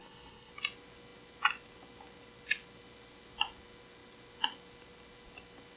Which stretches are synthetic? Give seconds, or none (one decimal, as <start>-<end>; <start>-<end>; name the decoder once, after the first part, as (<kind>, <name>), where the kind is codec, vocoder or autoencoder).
0.0-0.5 (codec, HILCodec)